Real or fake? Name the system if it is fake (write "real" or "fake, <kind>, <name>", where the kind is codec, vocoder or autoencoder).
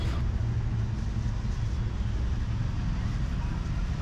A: real